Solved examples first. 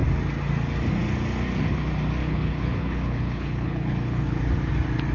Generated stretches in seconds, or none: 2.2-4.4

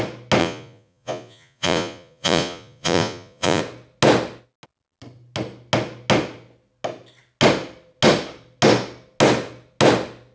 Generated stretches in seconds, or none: 0.4-3.6

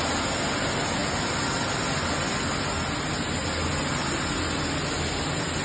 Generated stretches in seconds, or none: none